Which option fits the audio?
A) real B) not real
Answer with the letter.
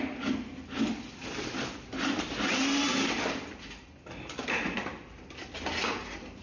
A